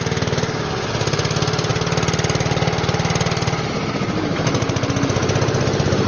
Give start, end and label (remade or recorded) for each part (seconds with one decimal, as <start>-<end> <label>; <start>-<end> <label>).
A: 0.0-6.1 recorded

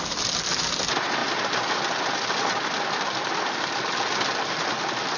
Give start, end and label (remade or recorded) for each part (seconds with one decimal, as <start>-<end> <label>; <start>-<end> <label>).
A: 0.0-5.2 recorded

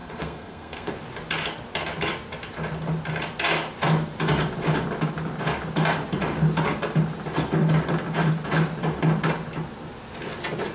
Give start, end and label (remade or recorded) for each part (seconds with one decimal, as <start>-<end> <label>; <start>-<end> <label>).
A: 0.0-0.9 remade; 0.9-10.7 recorded

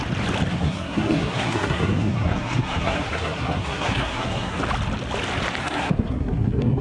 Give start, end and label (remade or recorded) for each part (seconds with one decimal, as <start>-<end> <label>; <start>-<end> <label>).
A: 0.0-0.5 recorded; 0.5-4.6 remade; 4.6-5.6 recorded; 5.6-6.8 remade

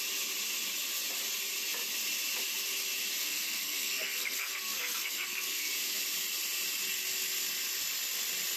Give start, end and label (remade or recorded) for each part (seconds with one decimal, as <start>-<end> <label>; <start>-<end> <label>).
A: 0.0-3.2 recorded; 3.2-5.7 remade; 5.7-8.6 recorded

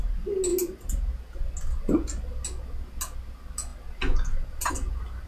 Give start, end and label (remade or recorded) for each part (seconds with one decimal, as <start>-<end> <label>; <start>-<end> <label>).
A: 0.0-5.3 recorded